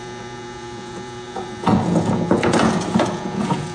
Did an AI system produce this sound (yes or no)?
yes